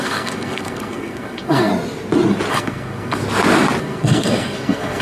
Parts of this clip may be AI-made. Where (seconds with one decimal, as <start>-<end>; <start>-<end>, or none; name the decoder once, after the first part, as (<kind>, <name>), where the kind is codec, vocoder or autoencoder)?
0.0-1.7 (codec, SNAC); 2.5-3.2; 3.8-5.0